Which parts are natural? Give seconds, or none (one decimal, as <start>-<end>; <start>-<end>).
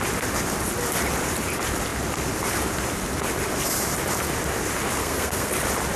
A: 0.0-5.0; 5.5-6.0